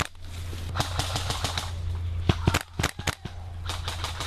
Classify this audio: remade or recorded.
recorded